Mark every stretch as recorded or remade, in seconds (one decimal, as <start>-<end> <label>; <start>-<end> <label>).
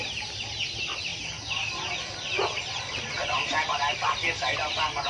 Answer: 0.0-5.1 recorded